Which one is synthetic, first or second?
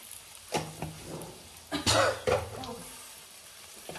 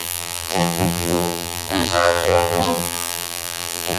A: second